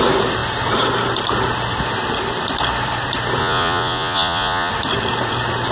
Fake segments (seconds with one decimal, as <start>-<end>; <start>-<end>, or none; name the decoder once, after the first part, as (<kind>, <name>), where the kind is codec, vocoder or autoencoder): 3.4-4.7 (vocoder, Vocos)